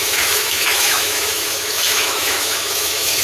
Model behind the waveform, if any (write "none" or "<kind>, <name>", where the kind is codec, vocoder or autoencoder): autoencoder, DAC-VAE